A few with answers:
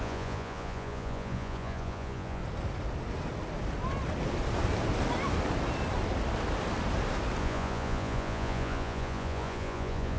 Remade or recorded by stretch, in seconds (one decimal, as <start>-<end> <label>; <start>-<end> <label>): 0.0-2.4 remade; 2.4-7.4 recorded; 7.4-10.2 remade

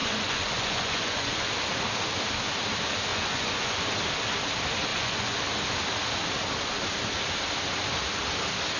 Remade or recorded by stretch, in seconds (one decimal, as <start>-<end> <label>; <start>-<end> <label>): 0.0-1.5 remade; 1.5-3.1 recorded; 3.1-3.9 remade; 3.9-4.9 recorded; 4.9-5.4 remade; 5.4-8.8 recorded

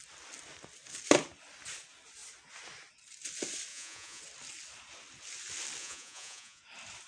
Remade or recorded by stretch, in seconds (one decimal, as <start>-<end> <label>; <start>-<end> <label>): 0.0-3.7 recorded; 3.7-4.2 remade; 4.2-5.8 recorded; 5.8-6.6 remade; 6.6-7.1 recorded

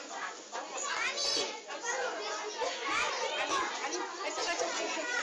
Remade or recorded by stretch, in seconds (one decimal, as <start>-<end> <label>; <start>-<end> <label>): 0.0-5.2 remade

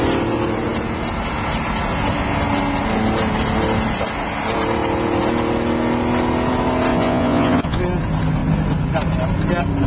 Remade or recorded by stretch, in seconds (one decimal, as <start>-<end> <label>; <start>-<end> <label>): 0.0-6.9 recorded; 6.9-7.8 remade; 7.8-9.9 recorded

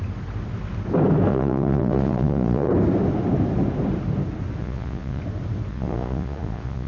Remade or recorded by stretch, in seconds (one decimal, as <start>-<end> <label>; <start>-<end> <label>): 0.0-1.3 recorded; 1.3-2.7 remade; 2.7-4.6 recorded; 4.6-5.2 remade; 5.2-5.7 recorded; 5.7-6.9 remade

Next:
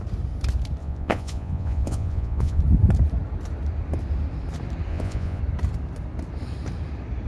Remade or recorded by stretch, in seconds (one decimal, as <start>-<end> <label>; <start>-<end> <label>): 0.0-0.8 recorded; 0.8-2.6 remade; 2.6-4.9 recorded; 4.9-5.4 remade; 5.4-7.3 recorded

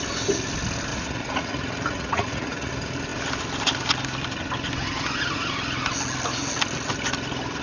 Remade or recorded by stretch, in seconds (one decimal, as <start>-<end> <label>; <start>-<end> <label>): 0.0-0.9 recorded; 0.9-2.7 remade; 2.7-7.6 recorded